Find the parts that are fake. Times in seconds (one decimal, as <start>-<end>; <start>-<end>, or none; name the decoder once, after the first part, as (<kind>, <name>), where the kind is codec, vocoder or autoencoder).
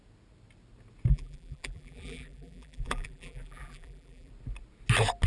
1.1-4.3 (vocoder, BigVGAN v2)